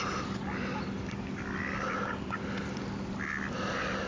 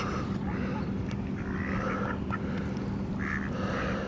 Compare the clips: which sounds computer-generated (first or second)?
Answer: second